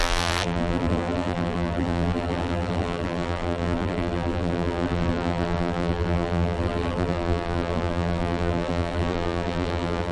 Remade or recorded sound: remade